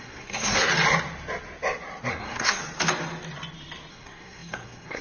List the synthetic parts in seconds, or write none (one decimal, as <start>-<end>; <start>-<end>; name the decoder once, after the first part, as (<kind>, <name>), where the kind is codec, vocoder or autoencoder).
0.0-0.7 (codec, SNAC); 2.1-2.6; 3.9-5.0